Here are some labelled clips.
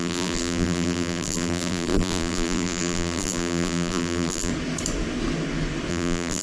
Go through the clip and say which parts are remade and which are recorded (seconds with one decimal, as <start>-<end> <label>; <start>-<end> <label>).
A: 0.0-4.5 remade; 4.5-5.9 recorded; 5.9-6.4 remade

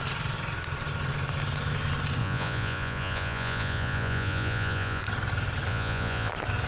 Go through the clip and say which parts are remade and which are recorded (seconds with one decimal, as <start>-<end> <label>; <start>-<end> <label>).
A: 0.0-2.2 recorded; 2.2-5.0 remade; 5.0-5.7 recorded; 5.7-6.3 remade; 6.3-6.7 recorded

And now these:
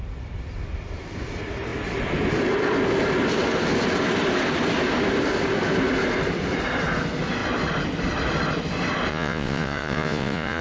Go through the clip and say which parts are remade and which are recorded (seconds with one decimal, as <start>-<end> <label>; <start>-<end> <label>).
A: 0.0-9.1 recorded; 9.1-10.6 remade